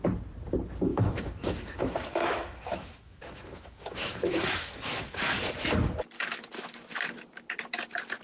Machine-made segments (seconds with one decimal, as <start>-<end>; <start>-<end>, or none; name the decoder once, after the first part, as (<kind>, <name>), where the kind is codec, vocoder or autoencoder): 0.9-5.5 (autoencoder, DAC-VAE)